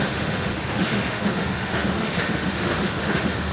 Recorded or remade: remade